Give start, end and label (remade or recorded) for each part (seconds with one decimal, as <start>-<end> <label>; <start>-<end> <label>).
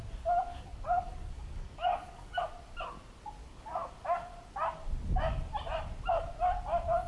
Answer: 0.0-0.5 recorded; 0.5-2.4 remade; 2.4-3.4 recorded; 3.4-3.9 remade; 3.9-7.1 recorded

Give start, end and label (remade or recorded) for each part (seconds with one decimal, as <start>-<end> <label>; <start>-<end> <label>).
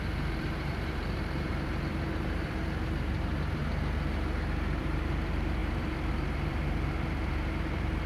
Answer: 0.0-3.6 remade; 3.6-4.8 recorded; 4.8-8.1 remade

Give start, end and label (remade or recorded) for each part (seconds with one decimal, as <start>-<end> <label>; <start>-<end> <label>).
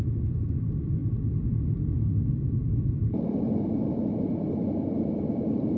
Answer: 0.0-5.8 recorded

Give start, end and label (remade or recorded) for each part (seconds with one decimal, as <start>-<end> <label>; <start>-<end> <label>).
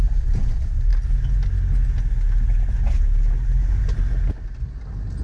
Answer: 0.0-5.2 recorded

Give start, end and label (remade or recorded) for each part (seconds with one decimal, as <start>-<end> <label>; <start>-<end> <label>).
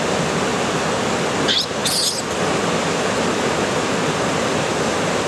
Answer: 0.0-5.3 recorded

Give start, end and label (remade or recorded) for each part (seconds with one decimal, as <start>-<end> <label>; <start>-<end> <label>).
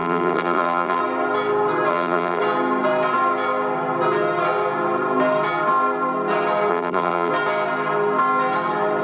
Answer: 0.0-1.0 remade; 1.0-1.9 recorded; 1.9-2.4 remade; 2.4-6.7 recorded; 6.7-7.3 remade; 7.3-9.0 recorded